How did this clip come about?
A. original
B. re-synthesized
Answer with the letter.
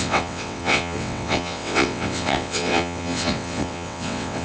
B